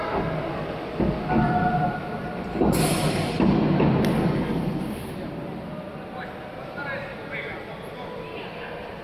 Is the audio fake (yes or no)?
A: no